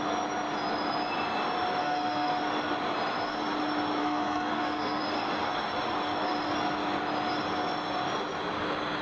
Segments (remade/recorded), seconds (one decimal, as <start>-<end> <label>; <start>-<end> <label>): 0.0-1.8 recorded; 1.8-2.3 remade; 2.3-4.0 recorded; 4.0-5.0 remade; 5.0-9.0 recorded